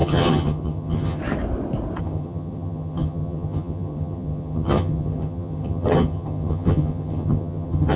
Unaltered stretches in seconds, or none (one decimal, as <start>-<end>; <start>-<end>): 1.2-2.0